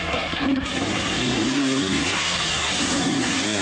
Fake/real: fake